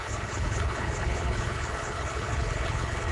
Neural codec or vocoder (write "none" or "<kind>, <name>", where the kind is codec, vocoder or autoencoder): codec, HILCodec